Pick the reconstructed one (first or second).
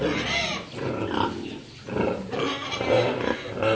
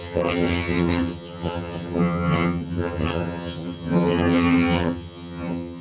second